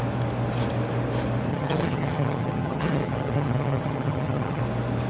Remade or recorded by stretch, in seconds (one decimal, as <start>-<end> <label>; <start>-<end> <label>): 0.0-1.5 recorded; 1.5-4.6 remade; 4.6-5.1 recorded